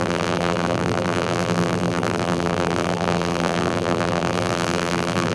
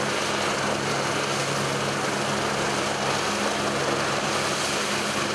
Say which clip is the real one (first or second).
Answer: second